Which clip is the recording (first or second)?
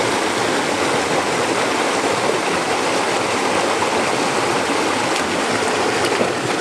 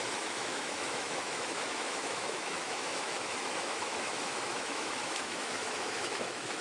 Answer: first